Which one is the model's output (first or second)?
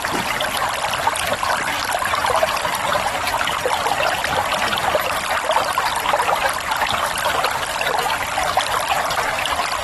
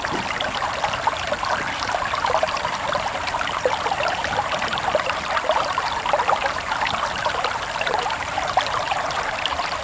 second